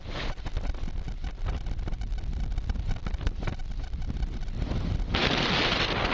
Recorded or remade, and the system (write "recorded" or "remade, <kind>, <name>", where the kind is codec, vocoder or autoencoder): recorded